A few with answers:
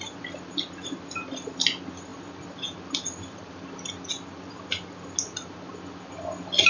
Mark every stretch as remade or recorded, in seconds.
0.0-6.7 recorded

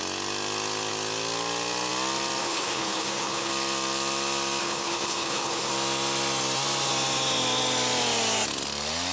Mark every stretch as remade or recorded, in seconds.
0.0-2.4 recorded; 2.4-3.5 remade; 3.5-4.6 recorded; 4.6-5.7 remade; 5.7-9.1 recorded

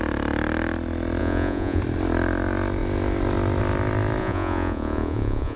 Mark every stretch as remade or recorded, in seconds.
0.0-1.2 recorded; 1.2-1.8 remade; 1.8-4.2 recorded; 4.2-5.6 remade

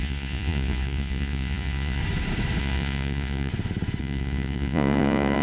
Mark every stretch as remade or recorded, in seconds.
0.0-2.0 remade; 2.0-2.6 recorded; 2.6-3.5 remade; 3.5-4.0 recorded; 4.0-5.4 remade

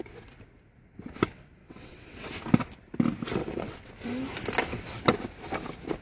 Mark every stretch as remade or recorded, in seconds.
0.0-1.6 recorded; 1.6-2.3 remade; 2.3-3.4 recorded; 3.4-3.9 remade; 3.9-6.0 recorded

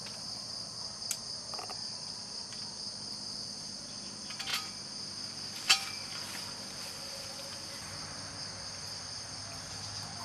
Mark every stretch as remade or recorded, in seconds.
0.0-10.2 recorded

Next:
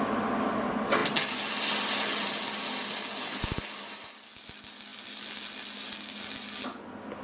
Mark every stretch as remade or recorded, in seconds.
0.0-7.2 recorded